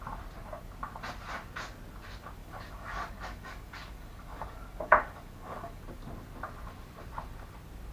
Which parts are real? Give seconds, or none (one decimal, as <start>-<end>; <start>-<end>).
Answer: 0.0-2.4; 5.8-7.9